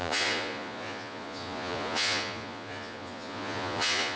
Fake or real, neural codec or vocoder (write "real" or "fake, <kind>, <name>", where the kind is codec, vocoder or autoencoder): fake, vocoder, Vocos